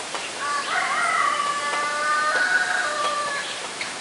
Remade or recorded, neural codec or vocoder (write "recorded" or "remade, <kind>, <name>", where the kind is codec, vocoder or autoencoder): remade, vocoder, BigVGAN v2